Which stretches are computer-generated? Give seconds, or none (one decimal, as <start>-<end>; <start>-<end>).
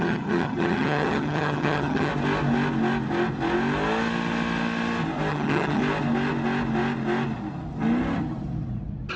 0.0-2.1; 5.3-5.8